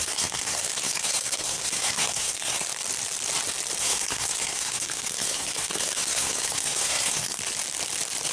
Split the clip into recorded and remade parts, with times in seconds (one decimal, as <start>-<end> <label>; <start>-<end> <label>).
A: 0.0-2.7 remade; 2.7-3.8 recorded; 3.8-7.4 remade; 7.4-8.3 recorded